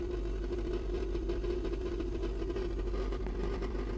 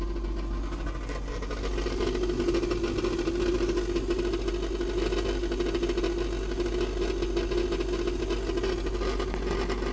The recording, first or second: second